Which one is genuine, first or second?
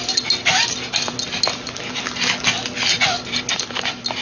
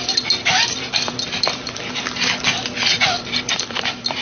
first